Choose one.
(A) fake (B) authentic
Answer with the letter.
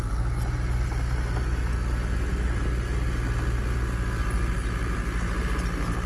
B